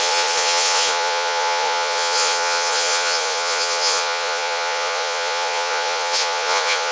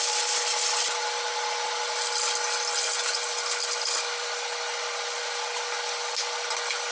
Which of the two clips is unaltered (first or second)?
second